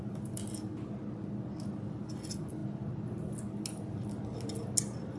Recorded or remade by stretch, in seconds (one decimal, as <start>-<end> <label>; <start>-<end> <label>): 0.0-5.2 recorded